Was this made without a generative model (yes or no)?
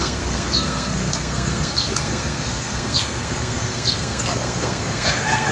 no